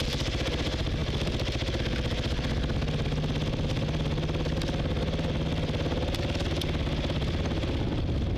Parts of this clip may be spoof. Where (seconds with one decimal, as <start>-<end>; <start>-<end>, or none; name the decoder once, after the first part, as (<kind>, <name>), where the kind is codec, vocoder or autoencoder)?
none